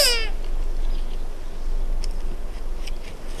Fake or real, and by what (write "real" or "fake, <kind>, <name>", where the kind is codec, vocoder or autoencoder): real